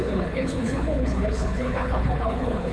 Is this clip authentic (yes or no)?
no